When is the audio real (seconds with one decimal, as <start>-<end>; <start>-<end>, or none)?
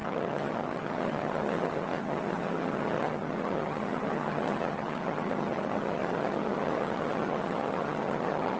none